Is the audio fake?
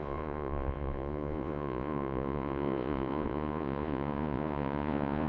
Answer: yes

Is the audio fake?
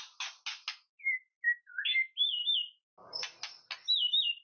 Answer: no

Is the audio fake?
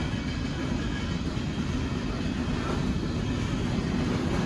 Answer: no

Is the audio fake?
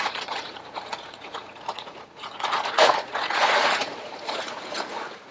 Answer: yes